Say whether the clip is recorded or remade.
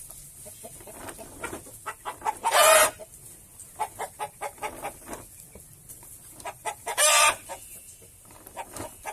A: recorded